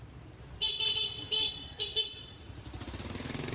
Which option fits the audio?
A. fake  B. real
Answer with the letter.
B